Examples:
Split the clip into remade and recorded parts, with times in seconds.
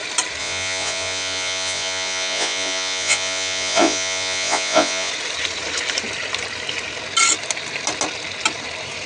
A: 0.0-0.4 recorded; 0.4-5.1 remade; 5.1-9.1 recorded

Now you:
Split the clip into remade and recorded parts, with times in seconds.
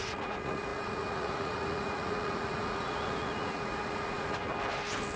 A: 0.0-4.5 remade; 4.5-5.2 recorded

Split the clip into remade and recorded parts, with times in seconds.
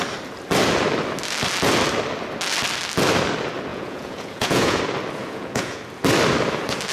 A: 0.0-3.7 recorded; 3.7-4.8 remade; 4.8-5.2 recorded; 5.2-5.8 remade; 5.8-6.9 recorded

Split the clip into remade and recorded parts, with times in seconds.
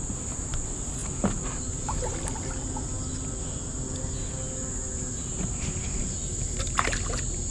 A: 0.0-7.5 recorded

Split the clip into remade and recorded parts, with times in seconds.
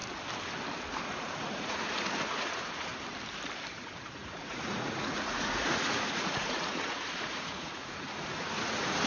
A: 0.0-1.0 recorded; 1.0-2.9 remade; 2.9-3.7 recorded; 3.7-9.1 remade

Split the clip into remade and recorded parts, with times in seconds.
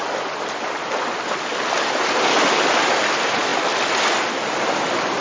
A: 0.0-5.2 recorded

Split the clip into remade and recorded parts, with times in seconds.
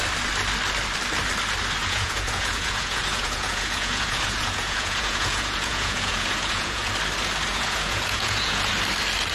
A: 0.0-1.8 recorded; 1.8-6.9 remade; 6.9-7.5 recorded; 7.5-8.7 remade; 8.7-9.3 recorded